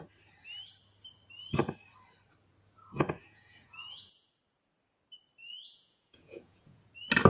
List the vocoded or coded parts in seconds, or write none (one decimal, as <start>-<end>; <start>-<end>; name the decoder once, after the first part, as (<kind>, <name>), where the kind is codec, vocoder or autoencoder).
3.2-4.3 (vocoder, Vocos); 5.4-6.8